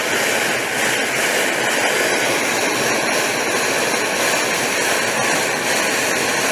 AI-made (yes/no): no